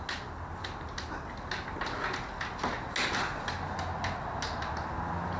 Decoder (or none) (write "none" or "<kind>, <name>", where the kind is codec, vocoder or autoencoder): none